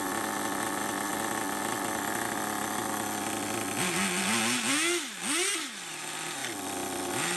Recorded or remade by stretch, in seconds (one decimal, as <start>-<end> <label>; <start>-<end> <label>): 0.0-7.4 recorded